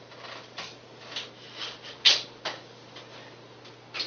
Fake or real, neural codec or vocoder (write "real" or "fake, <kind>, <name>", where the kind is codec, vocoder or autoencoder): real